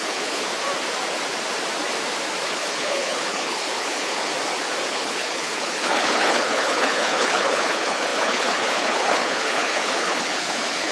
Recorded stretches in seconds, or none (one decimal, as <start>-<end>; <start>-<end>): 0.5-2.4; 4.3-4.9